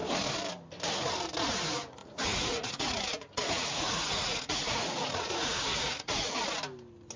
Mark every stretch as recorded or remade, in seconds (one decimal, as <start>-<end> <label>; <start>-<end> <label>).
0.0-2.0 recorded; 2.0-6.3 remade; 6.3-7.2 recorded